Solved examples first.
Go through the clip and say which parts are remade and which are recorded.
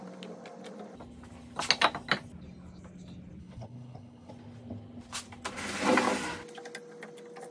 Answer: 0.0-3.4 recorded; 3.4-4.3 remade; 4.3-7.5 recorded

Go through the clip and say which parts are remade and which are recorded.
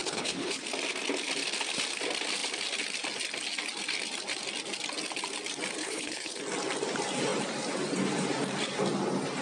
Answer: 0.0-0.6 remade; 0.6-5.8 recorded; 5.8-6.4 remade; 6.4-9.4 recorded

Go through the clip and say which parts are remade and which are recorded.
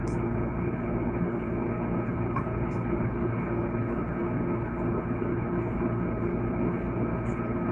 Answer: 0.0-7.7 remade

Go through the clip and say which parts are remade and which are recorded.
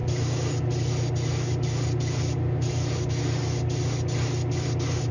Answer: 0.0-5.1 recorded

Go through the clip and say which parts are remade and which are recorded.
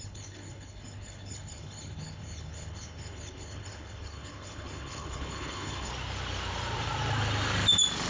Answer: 0.0-5.9 remade; 5.9-8.1 recorded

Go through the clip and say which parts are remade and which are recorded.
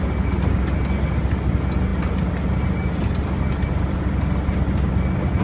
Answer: 0.0-5.4 recorded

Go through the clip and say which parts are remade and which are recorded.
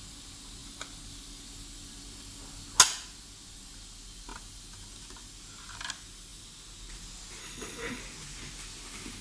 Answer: 0.0-7.4 recorded; 7.4-8.0 remade; 8.0-9.2 recorded